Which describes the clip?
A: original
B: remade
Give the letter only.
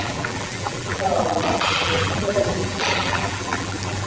B